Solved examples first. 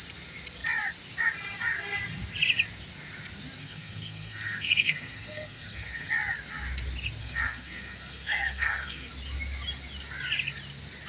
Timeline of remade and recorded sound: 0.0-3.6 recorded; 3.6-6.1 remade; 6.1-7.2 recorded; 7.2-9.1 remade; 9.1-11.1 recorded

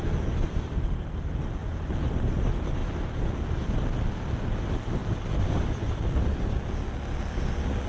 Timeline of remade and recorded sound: 0.0-1.6 recorded; 1.6-2.4 remade; 2.4-7.9 recorded

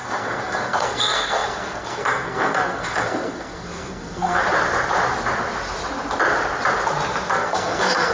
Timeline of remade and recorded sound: 0.0-4.4 remade; 4.4-7.3 recorded; 7.3-8.1 remade

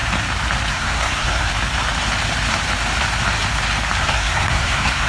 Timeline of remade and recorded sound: 0.0-0.7 recorded; 0.7-1.5 remade; 1.5-4.0 recorded; 4.0-5.1 remade

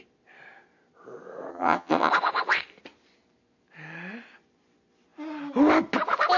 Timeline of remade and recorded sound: 0.0-1.5 recorded; 1.5-2.1 remade; 2.1-6.4 recorded

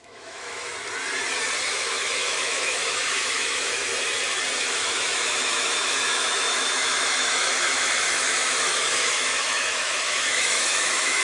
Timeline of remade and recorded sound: 0.0-0.7 remade; 0.7-1.7 recorded; 1.7-3.9 remade; 3.9-4.6 recorded; 4.6-11.2 remade

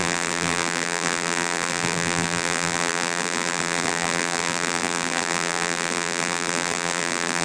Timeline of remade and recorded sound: 0.0-7.4 remade